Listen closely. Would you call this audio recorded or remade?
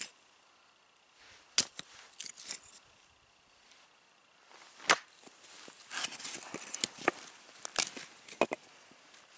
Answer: recorded